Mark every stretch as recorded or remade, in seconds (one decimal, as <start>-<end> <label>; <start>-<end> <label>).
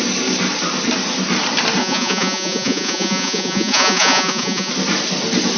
0.0-1.8 recorded; 1.8-4.7 remade; 4.7-5.6 recorded